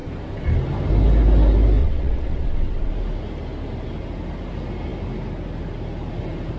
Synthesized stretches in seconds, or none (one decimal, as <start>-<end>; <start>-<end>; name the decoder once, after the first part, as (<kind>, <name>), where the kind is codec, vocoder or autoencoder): 1.8-2.9 (vocoder, WaveNeXt)